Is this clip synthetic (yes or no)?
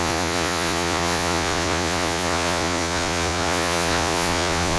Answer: yes